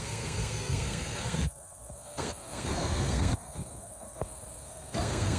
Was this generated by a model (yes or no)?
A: yes